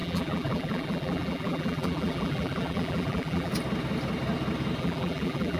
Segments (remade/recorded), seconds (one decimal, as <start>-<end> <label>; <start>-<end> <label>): 0.0-3.5 remade; 3.5-4.8 recorded; 4.8-5.6 remade